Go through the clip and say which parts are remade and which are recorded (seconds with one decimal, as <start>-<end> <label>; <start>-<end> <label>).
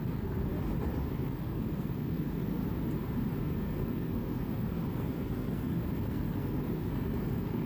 0.0-0.5 remade; 0.5-1.1 recorded; 1.1-2.6 remade; 2.6-3.4 recorded; 3.4-7.7 remade